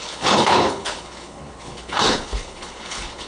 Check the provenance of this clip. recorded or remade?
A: remade